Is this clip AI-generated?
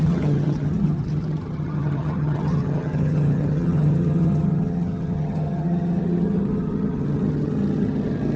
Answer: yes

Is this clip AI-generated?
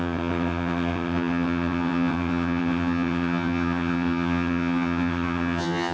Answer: yes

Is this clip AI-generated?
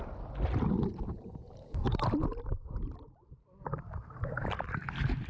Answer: no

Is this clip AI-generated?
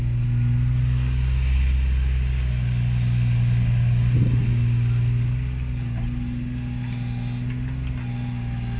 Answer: no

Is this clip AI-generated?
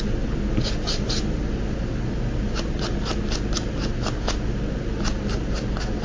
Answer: no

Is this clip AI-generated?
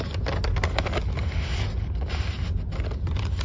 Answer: no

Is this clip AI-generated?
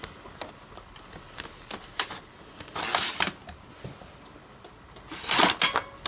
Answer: no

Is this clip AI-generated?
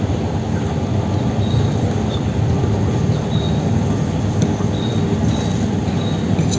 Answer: no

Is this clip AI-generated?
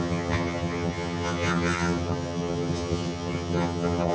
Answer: yes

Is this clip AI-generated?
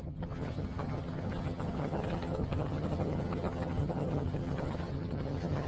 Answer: yes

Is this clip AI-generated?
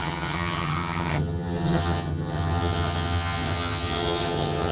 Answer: yes